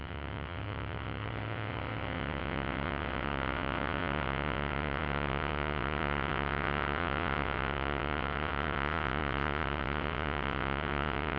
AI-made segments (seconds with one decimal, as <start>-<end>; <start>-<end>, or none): 0.0-11.4